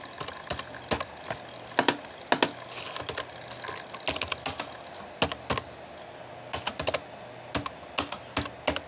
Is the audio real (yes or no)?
yes